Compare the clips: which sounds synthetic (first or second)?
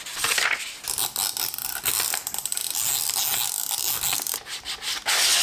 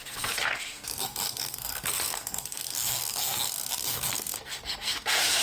second